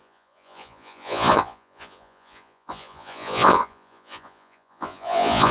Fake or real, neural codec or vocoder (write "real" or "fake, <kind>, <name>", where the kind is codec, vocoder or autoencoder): fake, vocoder, Vocos